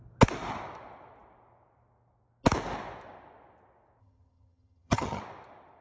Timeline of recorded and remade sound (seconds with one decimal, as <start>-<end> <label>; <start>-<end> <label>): 0.0-4.0 recorded; 4.0-5.2 remade; 5.2-5.8 recorded